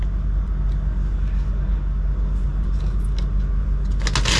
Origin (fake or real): real